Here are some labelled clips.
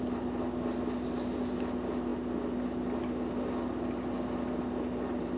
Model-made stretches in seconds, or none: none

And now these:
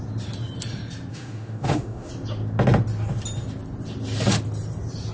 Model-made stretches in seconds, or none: 1.1-2.1